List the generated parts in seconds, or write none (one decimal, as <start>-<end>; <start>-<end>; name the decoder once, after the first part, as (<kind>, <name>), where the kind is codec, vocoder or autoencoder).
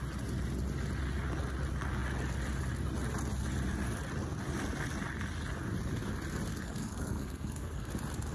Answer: 6.5-7.9 (codec, SNAC)